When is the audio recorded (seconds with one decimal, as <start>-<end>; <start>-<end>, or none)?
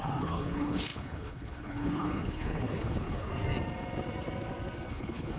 3.3-4.9